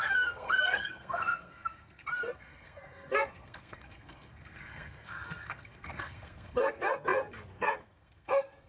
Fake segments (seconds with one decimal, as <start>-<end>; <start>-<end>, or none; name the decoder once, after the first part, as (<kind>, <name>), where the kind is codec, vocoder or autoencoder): 0.0-8.7 (codec, SNAC)